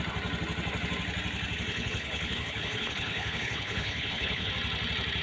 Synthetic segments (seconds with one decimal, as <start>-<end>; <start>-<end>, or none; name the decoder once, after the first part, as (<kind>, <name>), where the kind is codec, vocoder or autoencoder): 1.7-4.5 (codec, HILCodec)